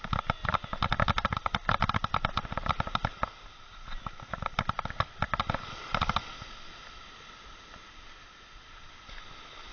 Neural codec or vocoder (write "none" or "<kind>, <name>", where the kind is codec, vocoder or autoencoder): none